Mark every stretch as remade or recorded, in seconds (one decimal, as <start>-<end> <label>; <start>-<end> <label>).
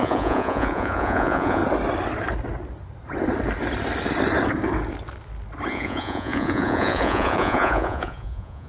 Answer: 0.0-1.6 remade; 1.6-5.7 recorded; 5.7-8.7 remade